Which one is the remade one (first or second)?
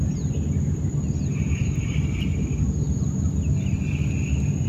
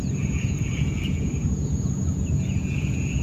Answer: second